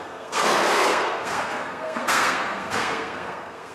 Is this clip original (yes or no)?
no